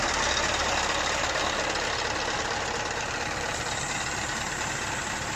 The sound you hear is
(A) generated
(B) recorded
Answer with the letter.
B